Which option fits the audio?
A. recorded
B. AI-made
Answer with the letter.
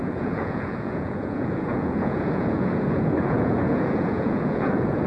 B